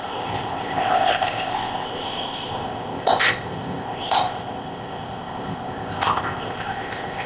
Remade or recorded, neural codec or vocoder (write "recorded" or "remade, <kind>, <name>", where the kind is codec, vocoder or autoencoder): remade, codec, ZipCodec